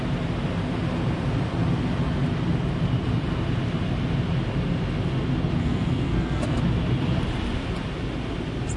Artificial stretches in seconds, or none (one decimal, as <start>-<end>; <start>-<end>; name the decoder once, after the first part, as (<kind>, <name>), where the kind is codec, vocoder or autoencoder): 5.6-6.6 (codec, SNAC)